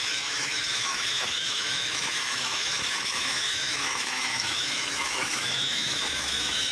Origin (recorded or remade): remade